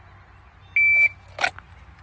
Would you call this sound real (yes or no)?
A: yes